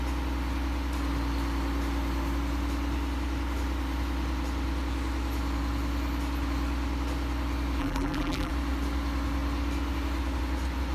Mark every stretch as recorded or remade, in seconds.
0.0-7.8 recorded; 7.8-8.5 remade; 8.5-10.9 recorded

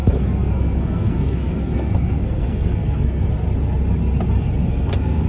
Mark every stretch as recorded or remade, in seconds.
0.0-3.2 remade; 3.2-4.6 recorded; 4.6-5.3 remade